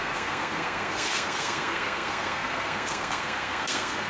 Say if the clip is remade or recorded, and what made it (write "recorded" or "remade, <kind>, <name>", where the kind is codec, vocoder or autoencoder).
remade, codec, SNAC